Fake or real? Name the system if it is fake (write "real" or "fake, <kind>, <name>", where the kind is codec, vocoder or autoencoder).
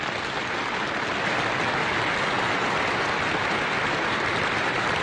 real